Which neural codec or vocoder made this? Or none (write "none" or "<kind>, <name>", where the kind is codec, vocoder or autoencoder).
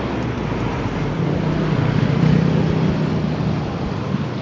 none